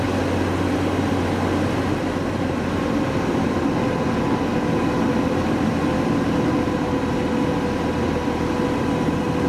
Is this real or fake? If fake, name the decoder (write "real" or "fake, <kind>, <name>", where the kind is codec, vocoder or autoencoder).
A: real